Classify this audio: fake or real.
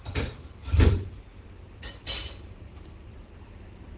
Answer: fake